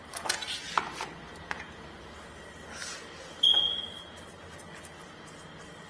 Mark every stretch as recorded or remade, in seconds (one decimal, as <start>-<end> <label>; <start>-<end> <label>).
0.0-5.9 recorded